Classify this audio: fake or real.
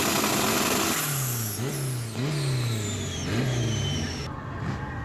real